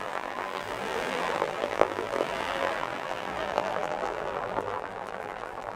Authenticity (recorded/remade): remade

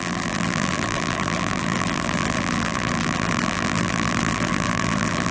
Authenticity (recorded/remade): remade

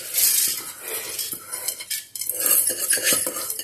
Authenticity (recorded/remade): remade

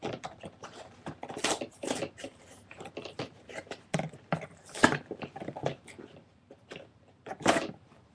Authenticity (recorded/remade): remade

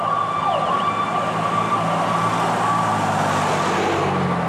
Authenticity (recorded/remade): recorded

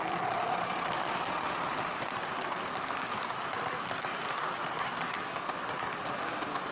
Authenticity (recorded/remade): recorded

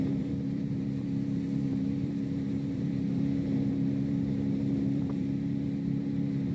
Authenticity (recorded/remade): remade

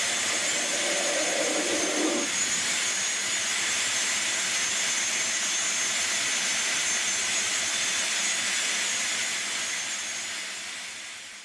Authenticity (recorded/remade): recorded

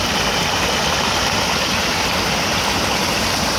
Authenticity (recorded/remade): recorded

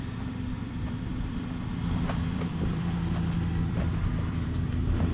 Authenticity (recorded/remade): remade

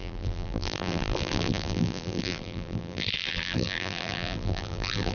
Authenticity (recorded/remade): remade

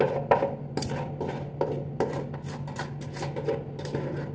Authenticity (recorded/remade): recorded